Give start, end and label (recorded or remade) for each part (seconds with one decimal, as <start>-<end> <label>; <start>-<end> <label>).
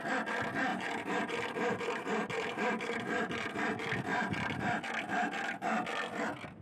0.0-0.7 recorded; 0.7-3.5 remade; 3.5-4.1 recorded; 4.1-4.8 remade; 4.8-6.6 recorded